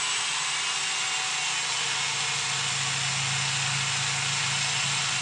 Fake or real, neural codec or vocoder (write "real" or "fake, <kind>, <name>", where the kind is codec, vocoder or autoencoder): real